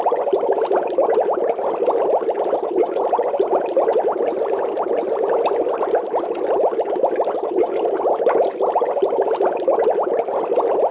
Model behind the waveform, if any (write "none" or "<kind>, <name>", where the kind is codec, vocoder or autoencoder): none